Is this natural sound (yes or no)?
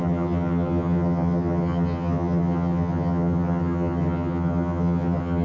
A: no